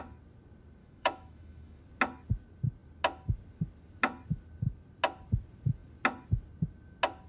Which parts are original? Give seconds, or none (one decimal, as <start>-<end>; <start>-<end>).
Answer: 0.0-0.8; 1.8-7.3